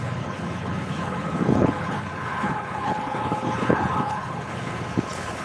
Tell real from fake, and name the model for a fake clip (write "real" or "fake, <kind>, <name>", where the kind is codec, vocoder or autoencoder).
fake, codec, HILCodec